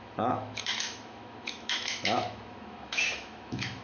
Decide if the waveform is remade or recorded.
remade